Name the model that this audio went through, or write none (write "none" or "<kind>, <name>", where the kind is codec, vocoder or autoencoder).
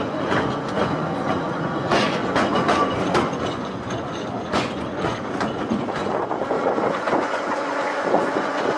vocoder, Vocos